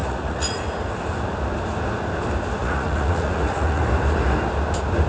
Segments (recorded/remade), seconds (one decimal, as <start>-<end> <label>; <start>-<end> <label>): 0.0-0.6 remade; 0.6-2.6 recorded; 2.6-3.8 remade; 3.8-5.1 recorded